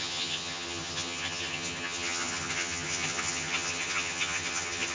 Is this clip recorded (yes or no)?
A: no